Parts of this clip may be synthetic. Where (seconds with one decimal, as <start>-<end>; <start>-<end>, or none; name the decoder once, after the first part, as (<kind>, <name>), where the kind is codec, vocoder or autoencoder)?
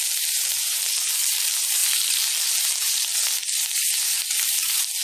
0.0-1.8 (vocoder, BigVGAN v2); 2.4-3.1; 4.1-5.0